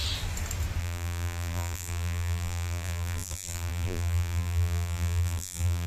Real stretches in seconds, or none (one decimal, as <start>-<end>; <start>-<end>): 0.0-0.8